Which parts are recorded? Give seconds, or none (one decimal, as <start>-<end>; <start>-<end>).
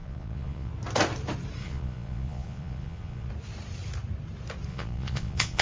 0.7-1.6; 3.3-4.7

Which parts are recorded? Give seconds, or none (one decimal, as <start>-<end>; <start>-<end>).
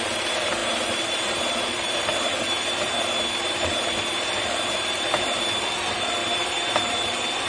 none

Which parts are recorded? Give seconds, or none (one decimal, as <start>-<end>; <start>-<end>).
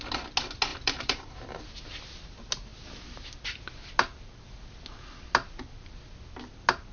0.0-0.7; 1.6-6.9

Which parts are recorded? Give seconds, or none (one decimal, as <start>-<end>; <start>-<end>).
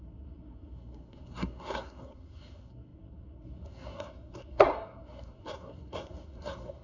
none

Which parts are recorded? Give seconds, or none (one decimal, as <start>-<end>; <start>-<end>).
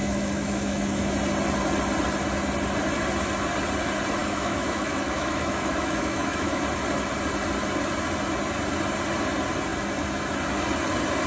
1.1-4.2; 6.6-11.3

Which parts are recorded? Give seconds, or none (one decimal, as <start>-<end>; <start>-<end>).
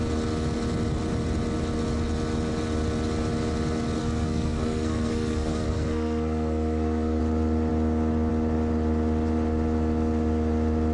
0.0-4.0; 7.2-10.9